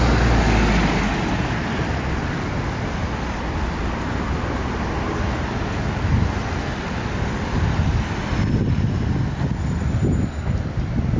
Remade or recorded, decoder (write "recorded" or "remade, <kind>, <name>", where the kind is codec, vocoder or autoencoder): recorded